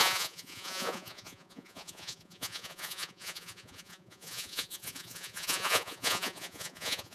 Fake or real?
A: fake